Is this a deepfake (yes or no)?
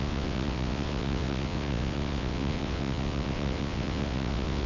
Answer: yes